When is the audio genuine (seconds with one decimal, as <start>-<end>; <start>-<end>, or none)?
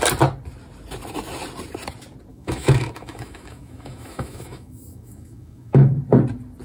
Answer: 0.0-2.3; 5.9-6.6